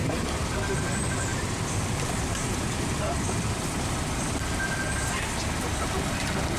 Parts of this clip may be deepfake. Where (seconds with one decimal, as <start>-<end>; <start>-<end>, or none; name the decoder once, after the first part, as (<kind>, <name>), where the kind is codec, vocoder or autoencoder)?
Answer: 0.0-0.7 (vocoder, BigVGAN v2); 1.3-4.1